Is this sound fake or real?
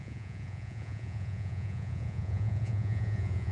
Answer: fake